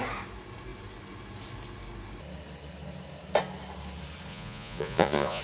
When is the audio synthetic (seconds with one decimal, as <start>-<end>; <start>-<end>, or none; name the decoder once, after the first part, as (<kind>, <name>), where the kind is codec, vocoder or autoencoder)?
4.3-5.4 (vocoder, Vocos)